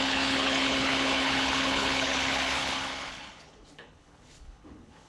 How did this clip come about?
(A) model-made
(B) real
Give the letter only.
A